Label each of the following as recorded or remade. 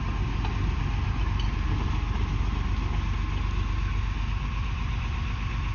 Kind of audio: recorded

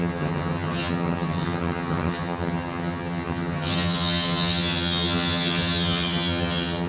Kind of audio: remade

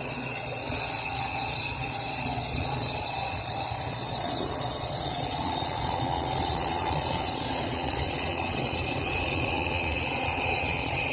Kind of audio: remade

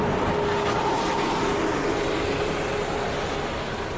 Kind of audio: recorded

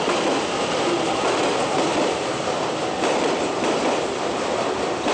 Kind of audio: remade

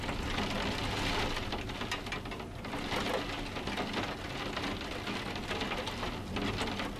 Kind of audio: recorded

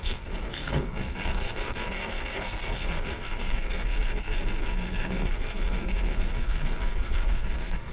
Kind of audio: remade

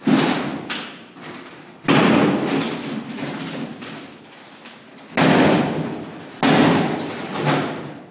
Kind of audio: recorded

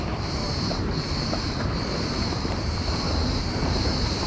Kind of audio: remade